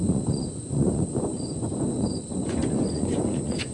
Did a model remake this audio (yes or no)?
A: yes